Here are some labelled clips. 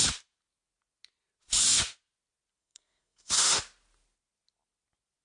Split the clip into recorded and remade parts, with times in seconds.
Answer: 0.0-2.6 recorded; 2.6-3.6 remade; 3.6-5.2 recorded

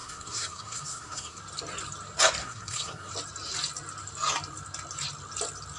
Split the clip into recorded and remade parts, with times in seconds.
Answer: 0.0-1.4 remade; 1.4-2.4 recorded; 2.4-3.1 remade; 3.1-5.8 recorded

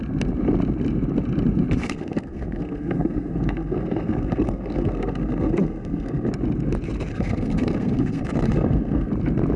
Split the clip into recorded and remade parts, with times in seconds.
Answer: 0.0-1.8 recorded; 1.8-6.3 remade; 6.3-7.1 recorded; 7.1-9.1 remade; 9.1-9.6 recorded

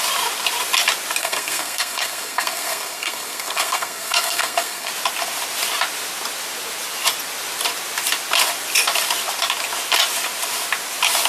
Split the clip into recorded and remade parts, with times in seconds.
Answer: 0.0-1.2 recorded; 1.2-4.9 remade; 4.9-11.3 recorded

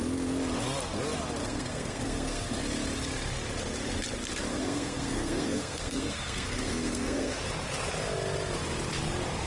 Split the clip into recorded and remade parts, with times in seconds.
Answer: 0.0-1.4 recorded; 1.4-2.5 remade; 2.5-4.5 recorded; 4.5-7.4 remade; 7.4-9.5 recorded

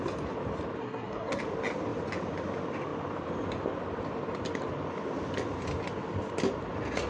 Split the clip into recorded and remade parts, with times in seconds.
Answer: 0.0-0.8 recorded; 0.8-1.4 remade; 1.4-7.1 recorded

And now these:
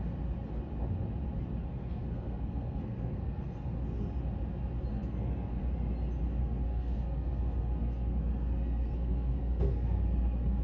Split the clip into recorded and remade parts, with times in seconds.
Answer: 0.0-1.6 recorded; 1.6-3.7 remade; 3.7-4.9 recorded; 4.9-5.7 remade; 5.7-6.4 recorded; 6.4-10.6 remade

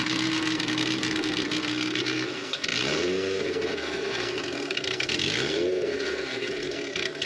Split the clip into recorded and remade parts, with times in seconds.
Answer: 0.0-7.3 remade